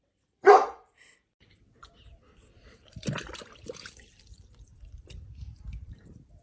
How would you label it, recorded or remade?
remade